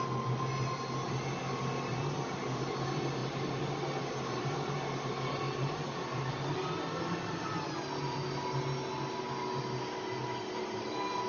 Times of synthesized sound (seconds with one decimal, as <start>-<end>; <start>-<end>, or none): none